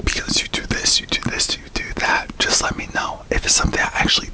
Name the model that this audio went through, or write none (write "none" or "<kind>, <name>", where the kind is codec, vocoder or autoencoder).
none